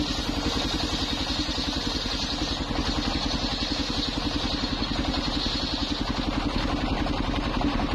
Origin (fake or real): real